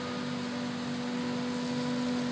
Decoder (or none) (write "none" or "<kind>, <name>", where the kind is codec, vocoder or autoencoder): none